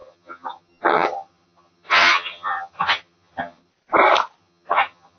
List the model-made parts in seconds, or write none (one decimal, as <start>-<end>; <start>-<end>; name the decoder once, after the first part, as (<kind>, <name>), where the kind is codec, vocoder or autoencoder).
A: 0.0-3.7 (vocoder, HiFi-GAN); 4.4-5.2